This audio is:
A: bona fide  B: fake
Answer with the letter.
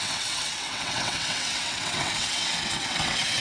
B